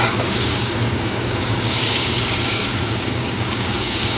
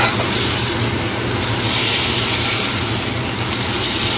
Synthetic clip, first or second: first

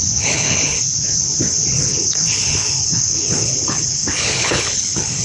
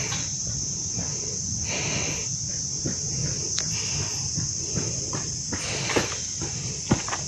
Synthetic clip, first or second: first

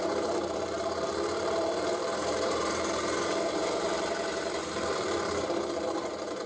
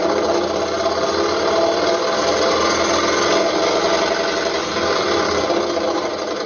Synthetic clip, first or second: first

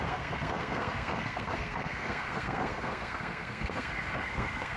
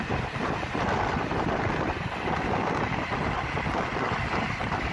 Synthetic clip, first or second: first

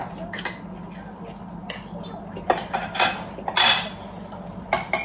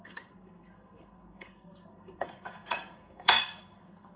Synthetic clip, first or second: second